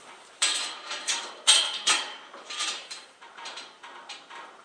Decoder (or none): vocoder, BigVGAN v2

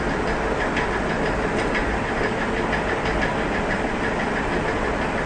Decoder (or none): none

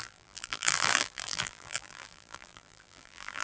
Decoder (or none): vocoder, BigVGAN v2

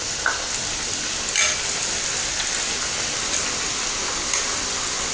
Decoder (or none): none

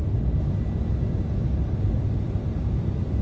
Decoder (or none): none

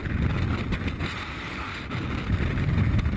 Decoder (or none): none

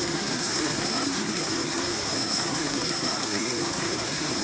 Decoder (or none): codec, SNAC